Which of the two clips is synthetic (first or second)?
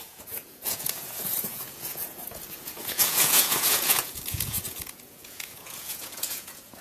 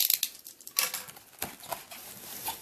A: first